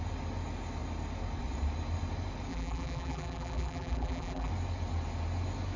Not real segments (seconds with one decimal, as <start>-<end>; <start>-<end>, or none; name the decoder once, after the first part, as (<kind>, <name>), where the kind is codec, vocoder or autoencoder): 2.5-4.5 (vocoder, BigVGAN v2)